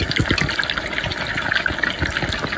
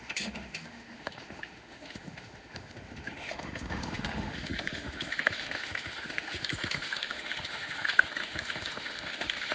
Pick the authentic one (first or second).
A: first